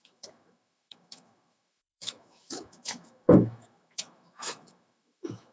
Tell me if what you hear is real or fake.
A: fake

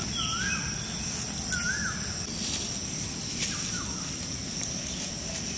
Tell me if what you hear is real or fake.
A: real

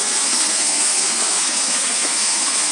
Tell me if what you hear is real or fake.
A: fake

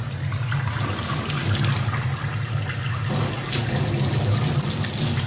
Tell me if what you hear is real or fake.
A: real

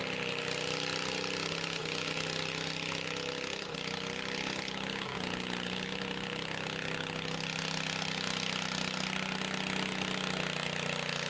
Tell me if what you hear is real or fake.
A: real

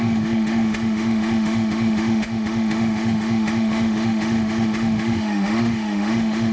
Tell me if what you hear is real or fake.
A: fake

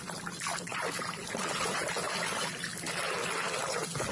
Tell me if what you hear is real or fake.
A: real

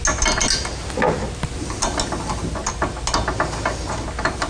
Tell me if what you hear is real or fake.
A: real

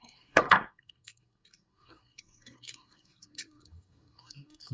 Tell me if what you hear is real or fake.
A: fake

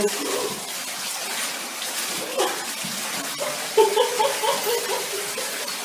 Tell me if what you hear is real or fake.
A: real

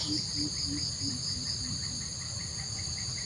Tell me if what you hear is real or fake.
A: real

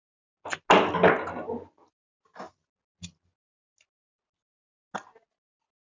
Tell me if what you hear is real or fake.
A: real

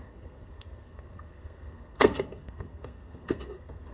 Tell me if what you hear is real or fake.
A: fake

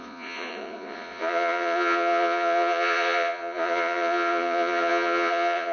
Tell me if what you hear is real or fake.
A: fake